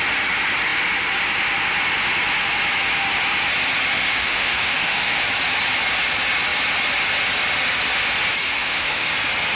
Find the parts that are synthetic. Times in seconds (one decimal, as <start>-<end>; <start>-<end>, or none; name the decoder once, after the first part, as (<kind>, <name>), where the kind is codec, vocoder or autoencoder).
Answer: 3.9-5.2 (autoencoder, DAC-VAE); 8.4-9.1